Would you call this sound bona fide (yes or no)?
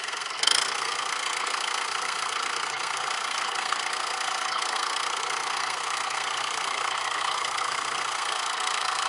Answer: no